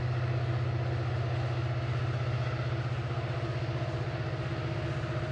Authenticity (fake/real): real